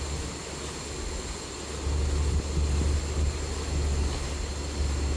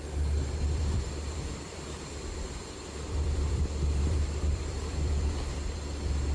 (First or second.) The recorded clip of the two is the first